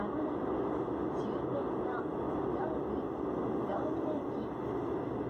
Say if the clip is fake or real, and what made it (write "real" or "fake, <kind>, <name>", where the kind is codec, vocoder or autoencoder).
real